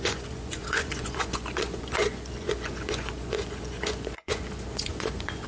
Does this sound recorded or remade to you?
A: remade